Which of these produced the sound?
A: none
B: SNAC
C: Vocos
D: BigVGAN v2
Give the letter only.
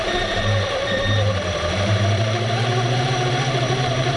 D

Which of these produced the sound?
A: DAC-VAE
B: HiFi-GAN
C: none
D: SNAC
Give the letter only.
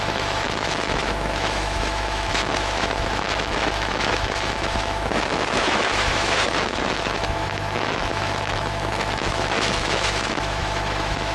A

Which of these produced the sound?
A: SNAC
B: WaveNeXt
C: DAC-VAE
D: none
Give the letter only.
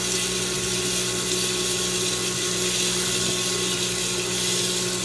D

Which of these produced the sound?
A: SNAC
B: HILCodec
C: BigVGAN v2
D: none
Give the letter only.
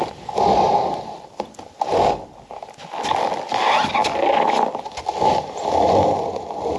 D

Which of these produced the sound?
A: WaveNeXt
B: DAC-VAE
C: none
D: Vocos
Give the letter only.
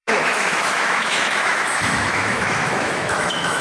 B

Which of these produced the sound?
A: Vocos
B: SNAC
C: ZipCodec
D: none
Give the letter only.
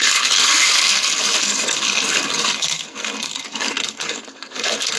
B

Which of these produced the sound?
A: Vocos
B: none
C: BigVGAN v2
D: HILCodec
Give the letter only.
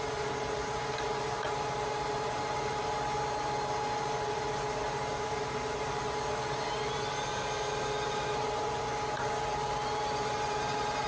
B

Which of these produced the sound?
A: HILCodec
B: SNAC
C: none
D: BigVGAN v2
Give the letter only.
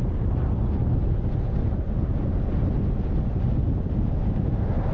C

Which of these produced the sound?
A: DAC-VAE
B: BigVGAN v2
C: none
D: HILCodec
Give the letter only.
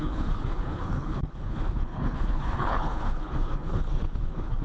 D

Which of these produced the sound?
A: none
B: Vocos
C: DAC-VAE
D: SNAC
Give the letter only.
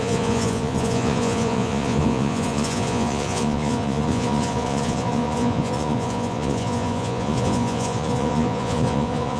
B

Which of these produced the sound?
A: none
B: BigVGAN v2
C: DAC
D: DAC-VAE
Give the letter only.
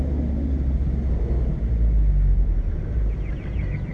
A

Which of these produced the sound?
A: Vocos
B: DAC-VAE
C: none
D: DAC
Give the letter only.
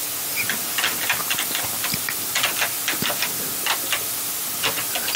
C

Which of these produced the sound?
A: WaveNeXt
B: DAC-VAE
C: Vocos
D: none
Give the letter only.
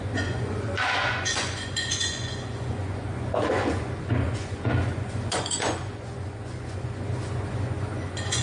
C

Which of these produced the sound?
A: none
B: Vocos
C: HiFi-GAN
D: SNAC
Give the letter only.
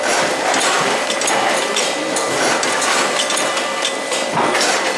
A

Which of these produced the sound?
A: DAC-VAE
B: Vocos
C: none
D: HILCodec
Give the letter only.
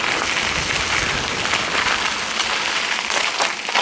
C